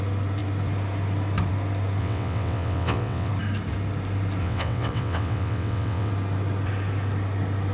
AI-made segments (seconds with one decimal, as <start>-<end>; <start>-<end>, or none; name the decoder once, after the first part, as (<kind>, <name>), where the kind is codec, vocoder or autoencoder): 2.0-3.3 (vocoder, WaveNeXt); 4.4-6.1